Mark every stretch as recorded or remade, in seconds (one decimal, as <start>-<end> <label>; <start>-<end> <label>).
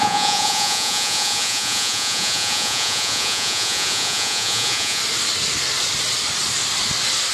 0.0-5.0 remade; 5.0-7.3 recorded